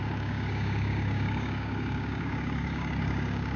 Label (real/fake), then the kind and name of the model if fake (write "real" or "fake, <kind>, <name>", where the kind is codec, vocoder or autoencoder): fake, codec, DAC